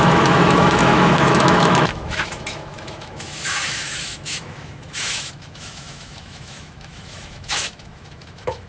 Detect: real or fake fake